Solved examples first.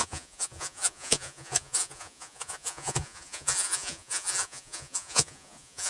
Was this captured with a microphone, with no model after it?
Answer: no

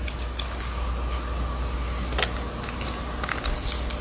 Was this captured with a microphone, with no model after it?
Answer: yes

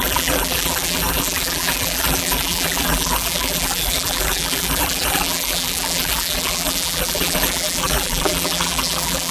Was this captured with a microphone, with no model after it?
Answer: no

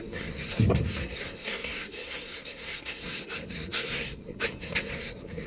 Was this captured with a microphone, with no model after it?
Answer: no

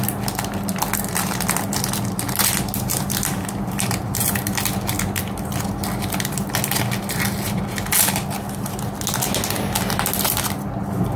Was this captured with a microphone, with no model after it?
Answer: yes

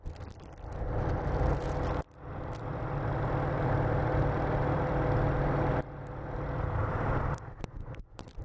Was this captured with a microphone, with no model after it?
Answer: no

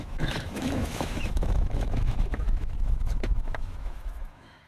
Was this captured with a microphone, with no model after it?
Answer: no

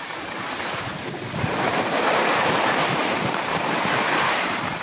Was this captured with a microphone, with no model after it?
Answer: no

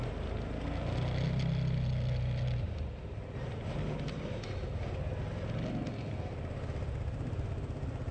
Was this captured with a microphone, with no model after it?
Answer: yes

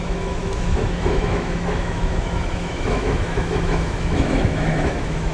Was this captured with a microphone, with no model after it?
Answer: no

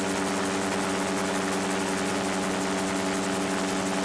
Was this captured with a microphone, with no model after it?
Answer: yes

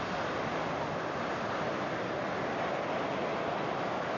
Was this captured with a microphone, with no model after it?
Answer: yes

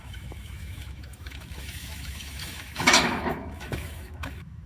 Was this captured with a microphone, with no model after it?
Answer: no